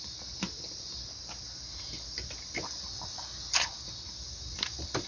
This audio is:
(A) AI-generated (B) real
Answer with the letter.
B